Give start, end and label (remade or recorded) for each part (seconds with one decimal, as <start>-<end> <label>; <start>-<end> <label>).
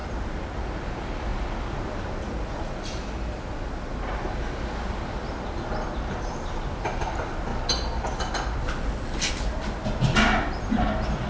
0.0-11.3 recorded